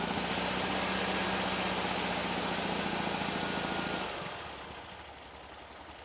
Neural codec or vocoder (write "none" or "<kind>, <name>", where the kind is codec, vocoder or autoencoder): none